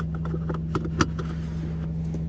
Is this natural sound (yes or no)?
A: yes